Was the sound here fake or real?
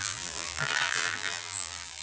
fake